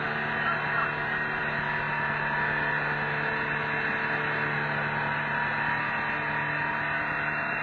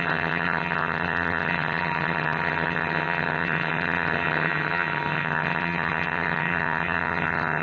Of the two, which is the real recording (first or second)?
first